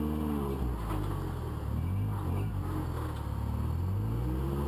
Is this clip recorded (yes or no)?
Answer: yes